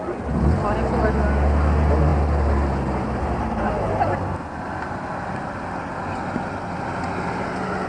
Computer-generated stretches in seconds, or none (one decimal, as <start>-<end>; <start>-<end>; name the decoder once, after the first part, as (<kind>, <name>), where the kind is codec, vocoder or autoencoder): none